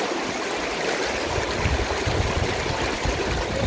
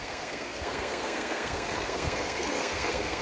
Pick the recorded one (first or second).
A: first